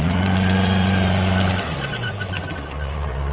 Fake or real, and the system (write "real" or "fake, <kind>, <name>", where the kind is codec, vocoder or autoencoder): fake, vocoder, Vocos